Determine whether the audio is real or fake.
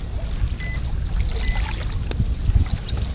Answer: real